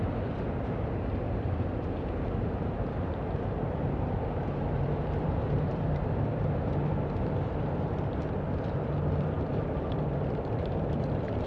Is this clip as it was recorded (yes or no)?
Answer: no